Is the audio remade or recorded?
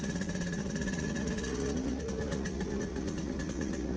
remade